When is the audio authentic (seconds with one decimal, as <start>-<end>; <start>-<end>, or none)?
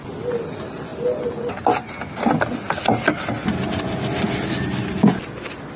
0.0-5.8